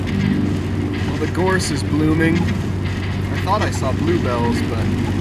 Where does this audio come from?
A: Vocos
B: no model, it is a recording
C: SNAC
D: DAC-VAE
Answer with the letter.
B